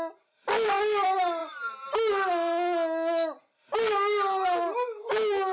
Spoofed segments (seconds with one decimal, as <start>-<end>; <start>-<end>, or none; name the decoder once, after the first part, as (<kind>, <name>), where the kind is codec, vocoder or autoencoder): none